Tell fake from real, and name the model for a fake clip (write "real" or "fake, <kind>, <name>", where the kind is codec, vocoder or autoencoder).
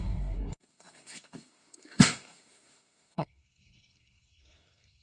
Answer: fake, codec, SNAC